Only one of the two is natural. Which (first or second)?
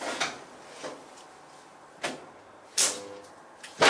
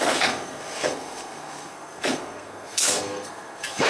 first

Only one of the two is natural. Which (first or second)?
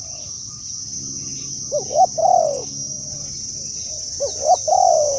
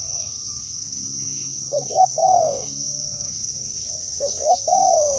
first